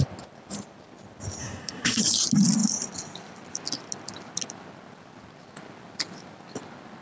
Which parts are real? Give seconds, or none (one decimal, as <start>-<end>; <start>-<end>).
0.0-1.4; 2.0-7.0